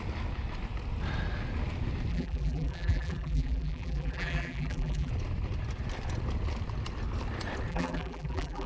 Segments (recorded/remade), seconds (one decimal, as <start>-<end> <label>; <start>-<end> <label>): 0.0-2.1 recorded; 2.1-5.1 remade; 5.1-7.7 recorded; 7.7-8.7 remade